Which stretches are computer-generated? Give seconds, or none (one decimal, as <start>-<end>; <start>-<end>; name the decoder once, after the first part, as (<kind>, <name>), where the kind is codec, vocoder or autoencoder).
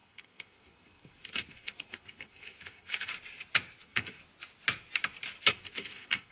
0.0-3.1 (codec, SNAC); 3.8-4.2; 5.5-6.3